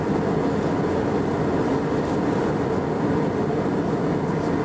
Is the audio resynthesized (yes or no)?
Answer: no